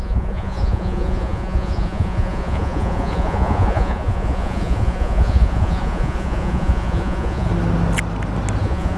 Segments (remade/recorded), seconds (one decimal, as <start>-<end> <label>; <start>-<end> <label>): 0.0-7.5 remade; 7.5-8.6 recorded; 8.6-9.0 remade